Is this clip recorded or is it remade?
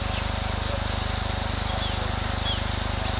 recorded